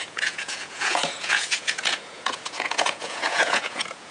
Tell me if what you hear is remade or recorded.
remade